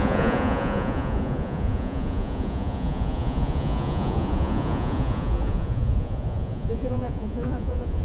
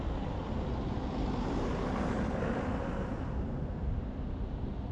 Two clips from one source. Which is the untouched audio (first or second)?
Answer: second